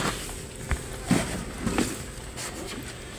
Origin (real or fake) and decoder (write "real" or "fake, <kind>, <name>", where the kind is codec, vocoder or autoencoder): real